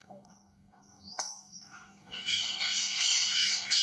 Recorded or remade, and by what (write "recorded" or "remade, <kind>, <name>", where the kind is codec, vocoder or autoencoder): remade, codec, DAC